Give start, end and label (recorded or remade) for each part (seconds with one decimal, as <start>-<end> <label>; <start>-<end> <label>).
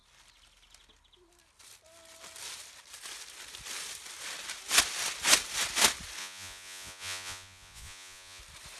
0.0-6.2 recorded; 6.2-8.4 remade; 8.4-8.8 recorded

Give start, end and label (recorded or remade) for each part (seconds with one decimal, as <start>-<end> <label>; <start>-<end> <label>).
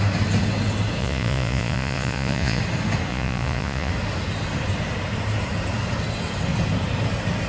0.0-1.0 recorded; 1.0-2.6 remade; 2.6-3.1 recorded; 3.1-3.9 remade; 3.9-7.5 recorded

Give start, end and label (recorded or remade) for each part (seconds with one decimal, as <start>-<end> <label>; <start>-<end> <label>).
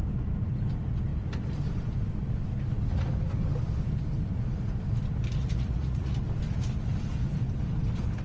0.0-5.4 recorded; 5.4-6.2 remade; 6.2-8.2 recorded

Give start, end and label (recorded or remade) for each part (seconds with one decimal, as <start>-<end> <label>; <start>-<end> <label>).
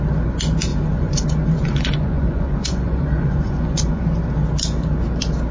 0.0-0.7 recorded; 0.7-4.0 remade; 4.0-5.5 recorded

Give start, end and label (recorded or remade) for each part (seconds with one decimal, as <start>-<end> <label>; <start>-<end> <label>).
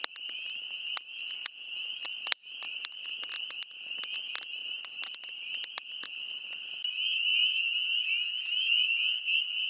0.0-1.2 recorded; 1.2-1.9 remade; 1.9-7.3 recorded; 7.3-9.2 remade; 9.2-9.7 recorded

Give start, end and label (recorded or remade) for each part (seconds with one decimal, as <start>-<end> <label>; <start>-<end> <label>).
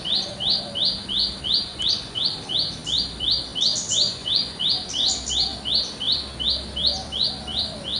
0.0-1.7 recorded; 1.7-2.3 remade; 2.3-3.9 recorded; 3.9-4.6 remade; 4.6-8.0 recorded